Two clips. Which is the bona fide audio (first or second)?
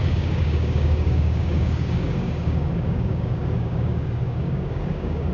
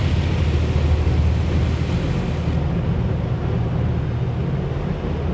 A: second